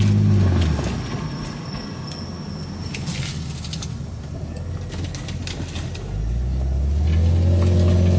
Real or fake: real